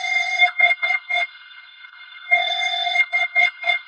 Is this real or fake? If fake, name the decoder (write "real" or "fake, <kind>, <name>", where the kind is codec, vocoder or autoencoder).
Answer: fake, codec, SNAC